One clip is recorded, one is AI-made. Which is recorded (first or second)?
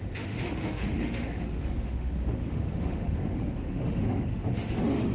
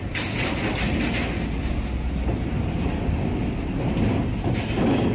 second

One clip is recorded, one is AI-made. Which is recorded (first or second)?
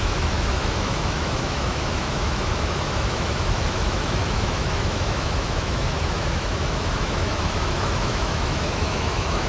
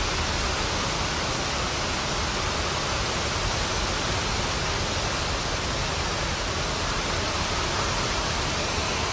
second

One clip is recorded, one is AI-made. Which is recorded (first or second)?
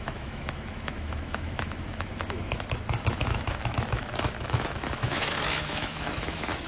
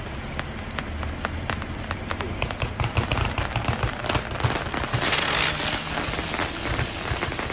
second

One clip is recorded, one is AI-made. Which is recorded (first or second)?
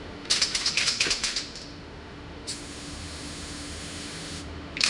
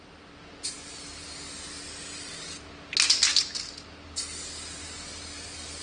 second